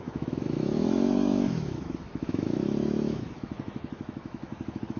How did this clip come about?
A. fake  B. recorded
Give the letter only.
A